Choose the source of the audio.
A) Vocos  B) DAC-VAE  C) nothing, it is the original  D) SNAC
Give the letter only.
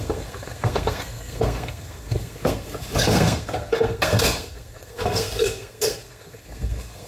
D